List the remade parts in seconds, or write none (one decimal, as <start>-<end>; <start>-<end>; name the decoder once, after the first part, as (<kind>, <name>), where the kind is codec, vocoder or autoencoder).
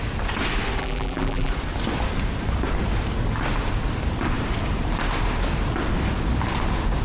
0.8-1.5 (vocoder, BigVGAN v2)